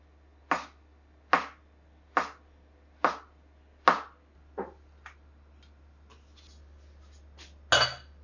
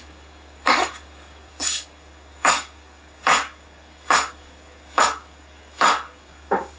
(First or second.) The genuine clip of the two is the first